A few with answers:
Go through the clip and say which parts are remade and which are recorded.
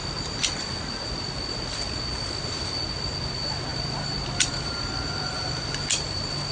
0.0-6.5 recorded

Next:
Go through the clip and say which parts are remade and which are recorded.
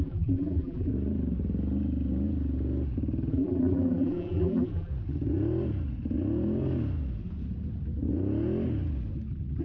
0.0-0.9 remade; 0.9-3.3 recorded; 3.3-4.9 remade; 4.9-9.6 recorded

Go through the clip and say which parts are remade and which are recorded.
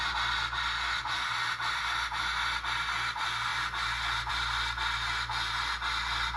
0.0-6.4 recorded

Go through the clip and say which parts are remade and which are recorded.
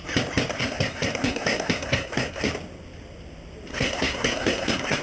0.0-0.5 recorded; 0.5-2.5 remade; 2.5-3.7 recorded; 3.7-5.0 remade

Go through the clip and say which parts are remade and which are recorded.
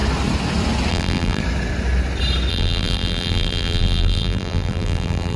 0.0-0.9 recorded; 0.9-1.4 remade; 1.4-2.5 recorded; 2.5-5.4 remade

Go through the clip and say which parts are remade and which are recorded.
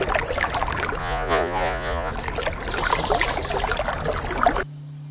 0.0-1.0 recorded; 1.0-2.1 remade; 2.1-5.1 recorded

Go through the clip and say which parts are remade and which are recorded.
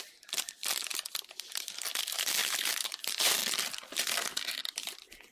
0.0-3.4 remade; 3.4-4.3 recorded; 4.3-5.3 remade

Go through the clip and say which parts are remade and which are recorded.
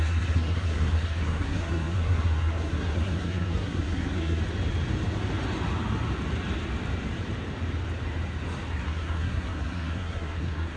0.0-4.4 remade; 4.4-8.7 recorded; 8.7-10.8 remade